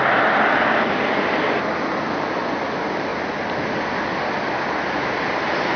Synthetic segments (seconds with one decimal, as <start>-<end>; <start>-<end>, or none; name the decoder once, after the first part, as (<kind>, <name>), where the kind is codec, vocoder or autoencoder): none